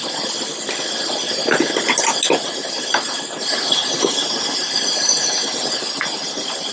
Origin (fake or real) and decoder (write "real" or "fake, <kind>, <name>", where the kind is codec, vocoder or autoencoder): real